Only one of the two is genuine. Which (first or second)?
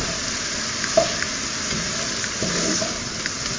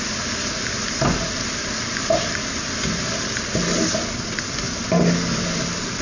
second